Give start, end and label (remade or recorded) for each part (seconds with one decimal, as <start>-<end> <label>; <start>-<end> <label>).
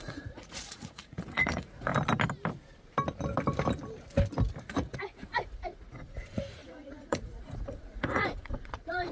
0.0-1.9 remade; 1.9-4.6 recorded; 4.6-9.1 remade